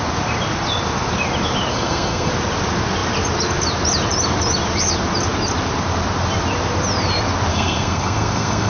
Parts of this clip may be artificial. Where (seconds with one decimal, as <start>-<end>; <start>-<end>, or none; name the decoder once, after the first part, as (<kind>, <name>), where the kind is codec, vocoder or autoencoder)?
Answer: 1.7-2.3 (codec, SNAC); 7.5-8.7